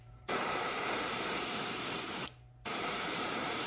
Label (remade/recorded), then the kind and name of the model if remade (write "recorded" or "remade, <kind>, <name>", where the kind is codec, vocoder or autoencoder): remade, vocoder, BigVGAN v2